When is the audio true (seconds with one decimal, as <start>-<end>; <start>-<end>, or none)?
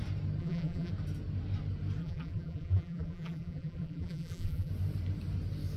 0.0-0.4; 0.9-2.0; 4.7-5.8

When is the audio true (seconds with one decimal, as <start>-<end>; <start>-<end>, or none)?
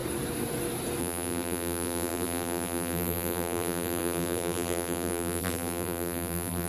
0.0-1.0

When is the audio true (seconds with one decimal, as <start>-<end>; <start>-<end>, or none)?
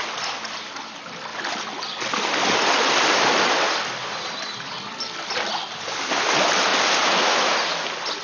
0.0-1.3; 6.2-8.2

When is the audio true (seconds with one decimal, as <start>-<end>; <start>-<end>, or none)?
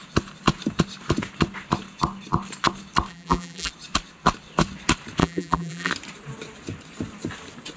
0.0-3.1; 3.7-5.2; 5.9-7.8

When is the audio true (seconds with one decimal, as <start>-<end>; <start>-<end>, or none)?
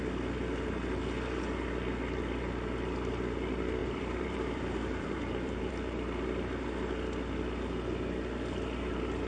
0.0-3.8; 5.7-9.3